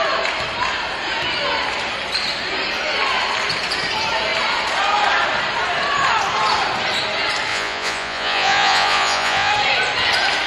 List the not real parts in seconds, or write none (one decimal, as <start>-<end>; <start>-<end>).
7.5-9.5